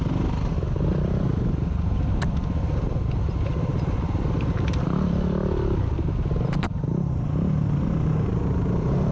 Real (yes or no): yes